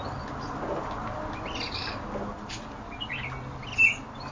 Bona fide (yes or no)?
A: yes